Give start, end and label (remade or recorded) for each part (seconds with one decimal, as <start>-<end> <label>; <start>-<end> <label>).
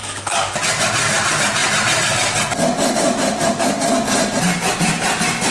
0.0-0.5 remade; 0.5-5.5 recorded